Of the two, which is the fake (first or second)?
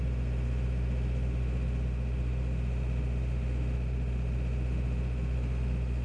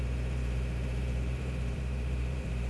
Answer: second